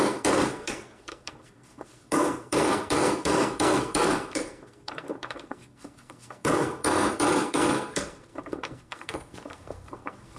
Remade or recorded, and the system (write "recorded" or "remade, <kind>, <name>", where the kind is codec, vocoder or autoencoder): remade, codec, SNAC